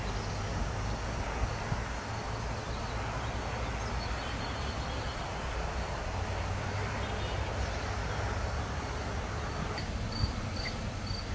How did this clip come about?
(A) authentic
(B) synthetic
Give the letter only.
A